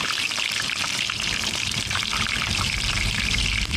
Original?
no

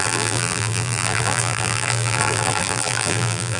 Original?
no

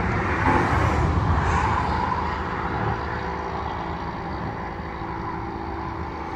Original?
yes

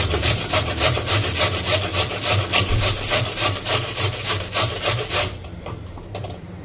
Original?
no